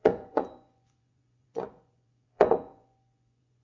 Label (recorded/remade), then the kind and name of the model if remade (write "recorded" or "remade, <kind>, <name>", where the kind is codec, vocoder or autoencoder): remade, vocoder, Vocos